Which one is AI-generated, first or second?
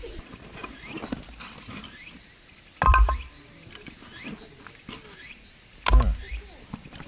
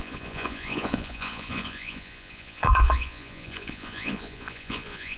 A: second